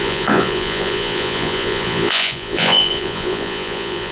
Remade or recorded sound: remade